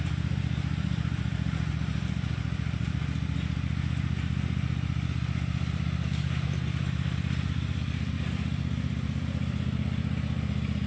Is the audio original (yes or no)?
yes